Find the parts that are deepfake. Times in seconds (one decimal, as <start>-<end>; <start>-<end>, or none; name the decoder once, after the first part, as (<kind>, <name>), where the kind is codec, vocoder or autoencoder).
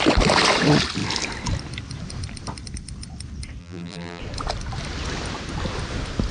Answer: 3.6-4.2 (vocoder, BigVGAN v2)